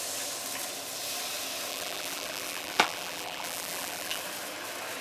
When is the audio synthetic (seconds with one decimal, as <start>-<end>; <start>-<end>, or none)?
1.7-4.2